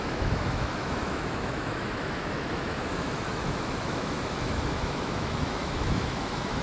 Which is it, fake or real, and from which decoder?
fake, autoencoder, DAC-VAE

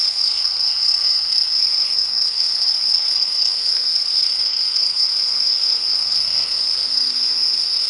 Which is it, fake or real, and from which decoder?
fake, codec, SNAC